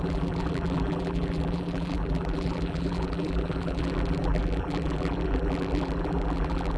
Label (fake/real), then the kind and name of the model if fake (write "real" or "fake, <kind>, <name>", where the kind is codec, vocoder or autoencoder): fake, vocoder, BigVGAN v2